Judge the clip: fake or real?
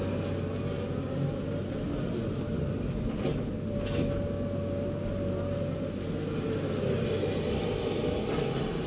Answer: real